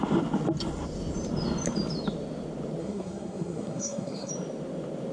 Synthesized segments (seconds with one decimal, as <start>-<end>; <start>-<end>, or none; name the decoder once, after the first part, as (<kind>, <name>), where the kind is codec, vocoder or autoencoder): 2.8-4.3 (codec, SNAC)